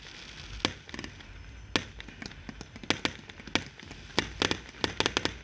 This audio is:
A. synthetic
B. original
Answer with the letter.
B